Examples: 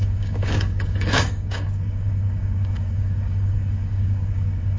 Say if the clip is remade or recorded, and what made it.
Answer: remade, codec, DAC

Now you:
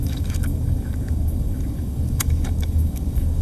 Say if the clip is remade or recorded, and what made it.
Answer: remade, codec, DAC